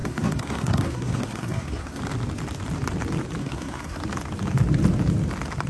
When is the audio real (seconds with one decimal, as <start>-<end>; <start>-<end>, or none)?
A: 2.0-3.4; 4.0-5.7